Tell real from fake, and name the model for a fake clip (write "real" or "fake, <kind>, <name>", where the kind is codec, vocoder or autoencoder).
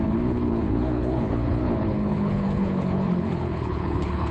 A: fake, codec, HILCodec